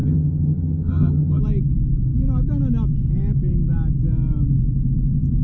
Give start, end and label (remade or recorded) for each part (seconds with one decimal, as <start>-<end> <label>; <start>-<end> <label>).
0.0-1.4 remade; 1.4-5.4 recorded